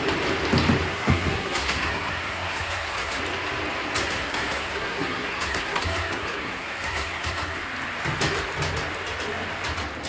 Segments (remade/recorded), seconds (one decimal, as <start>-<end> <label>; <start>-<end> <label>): 0.0-0.9 recorded; 0.9-3.2 remade; 3.2-4.0 recorded; 4.0-7.6 remade; 7.6-10.1 recorded

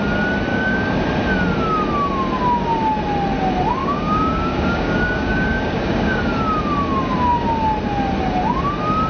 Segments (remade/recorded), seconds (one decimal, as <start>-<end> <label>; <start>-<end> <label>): 0.0-0.5 recorded; 0.5-1.0 remade; 1.0-3.8 recorded; 3.8-6.2 remade; 6.2-9.1 recorded

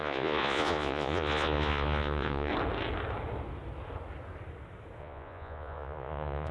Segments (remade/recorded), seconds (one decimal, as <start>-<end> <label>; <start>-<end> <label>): 0.0-2.5 remade; 2.5-5.0 recorded; 5.0-6.5 remade

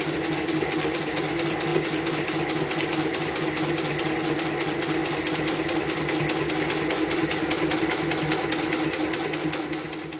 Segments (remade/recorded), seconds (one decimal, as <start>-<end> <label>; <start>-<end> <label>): 0.0-10.2 recorded

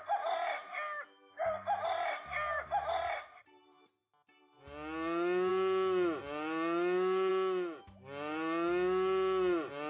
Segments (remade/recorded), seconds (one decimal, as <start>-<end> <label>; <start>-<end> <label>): 0.0-9.9 recorded